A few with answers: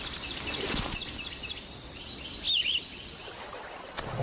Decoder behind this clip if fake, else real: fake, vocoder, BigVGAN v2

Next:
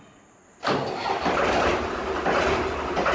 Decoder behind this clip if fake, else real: real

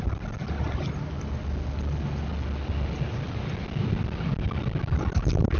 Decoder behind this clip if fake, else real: real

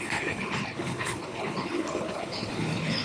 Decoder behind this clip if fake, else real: fake, codec, HILCodec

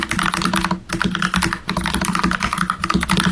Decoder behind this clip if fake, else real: real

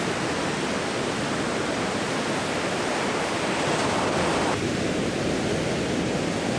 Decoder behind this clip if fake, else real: real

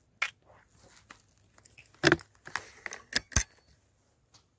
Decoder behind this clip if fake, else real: real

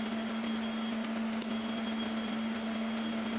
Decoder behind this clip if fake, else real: real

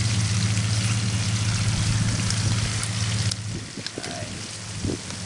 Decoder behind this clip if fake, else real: real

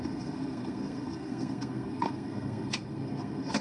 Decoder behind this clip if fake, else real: fake, codec, SNAC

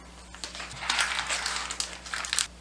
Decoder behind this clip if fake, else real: real